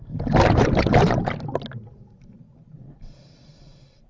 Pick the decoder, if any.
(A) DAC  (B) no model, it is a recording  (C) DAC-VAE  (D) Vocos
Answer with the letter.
B